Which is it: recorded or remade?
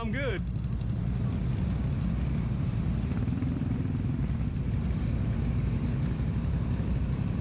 remade